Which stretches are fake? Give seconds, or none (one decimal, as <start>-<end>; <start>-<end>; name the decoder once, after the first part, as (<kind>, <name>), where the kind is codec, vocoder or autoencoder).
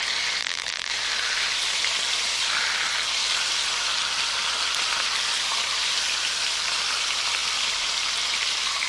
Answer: 0.4-0.9 (vocoder, BigVGAN v2)